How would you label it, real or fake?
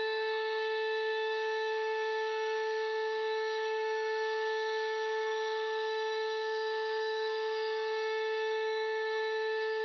fake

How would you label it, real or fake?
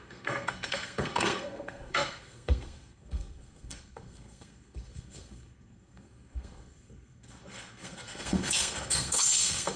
fake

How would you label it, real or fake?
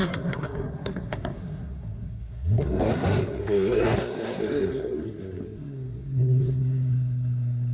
fake